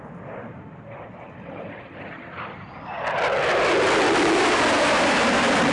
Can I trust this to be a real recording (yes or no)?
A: no